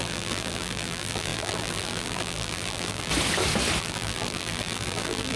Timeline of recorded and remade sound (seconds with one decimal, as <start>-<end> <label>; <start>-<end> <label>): 0.0-3.1 remade; 3.1-3.8 recorded; 3.8-5.4 remade